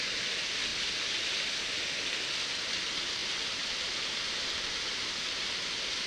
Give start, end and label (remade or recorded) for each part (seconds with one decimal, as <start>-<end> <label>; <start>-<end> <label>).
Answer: 0.0-6.1 recorded